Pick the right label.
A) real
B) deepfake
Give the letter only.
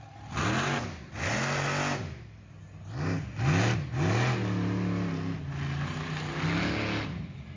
A